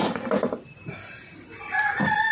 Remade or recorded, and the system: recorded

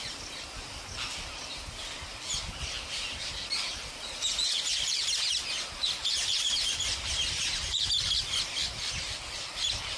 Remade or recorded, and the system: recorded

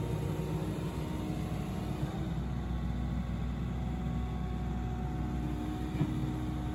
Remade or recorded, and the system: recorded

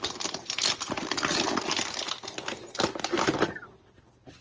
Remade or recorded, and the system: recorded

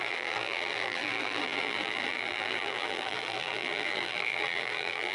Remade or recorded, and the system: remade, vocoder, BigVGAN v2